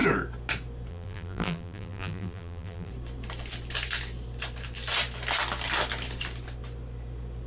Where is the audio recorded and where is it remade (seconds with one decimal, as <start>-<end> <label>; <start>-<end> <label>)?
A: 0.0-0.9 recorded; 0.9-2.9 remade; 2.9-7.5 recorded